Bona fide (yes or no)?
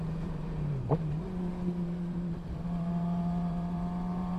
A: no